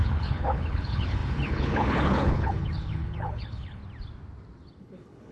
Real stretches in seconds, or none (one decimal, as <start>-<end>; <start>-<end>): 3.8-4.8